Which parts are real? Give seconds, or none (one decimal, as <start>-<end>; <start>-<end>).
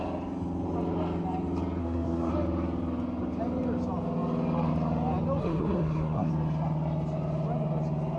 0.0-1.8; 2.3-5.4; 6.3-8.2